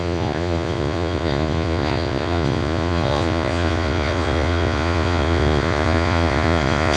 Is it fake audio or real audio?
fake